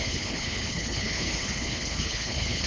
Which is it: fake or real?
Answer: fake